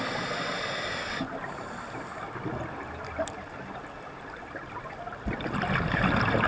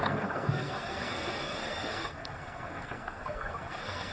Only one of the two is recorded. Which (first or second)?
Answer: first